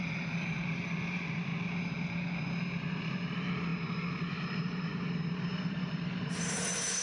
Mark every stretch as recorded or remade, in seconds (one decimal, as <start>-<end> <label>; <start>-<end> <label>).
0.0-1.5 remade; 1.5-2.8 recorded; 2.8-3.7 remade; 3.7-4.3 recorded; 4.3-4.9 remade; 4.9-5.5 recorded; 5.5-7.0 remade